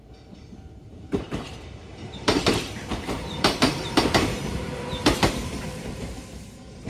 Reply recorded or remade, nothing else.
remade